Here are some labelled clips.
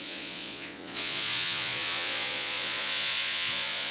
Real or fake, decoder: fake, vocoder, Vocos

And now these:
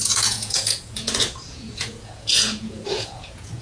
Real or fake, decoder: fake, vocoder, Vocos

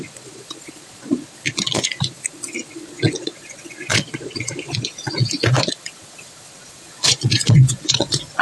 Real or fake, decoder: fake, vocoder, Vocos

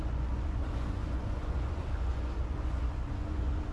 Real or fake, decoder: fake, vocoder, Vocos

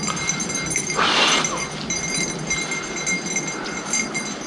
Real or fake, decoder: real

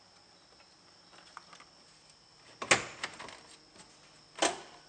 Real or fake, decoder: real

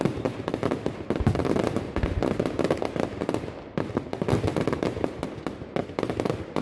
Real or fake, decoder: real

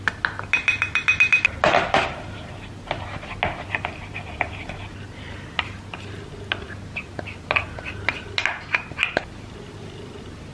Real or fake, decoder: real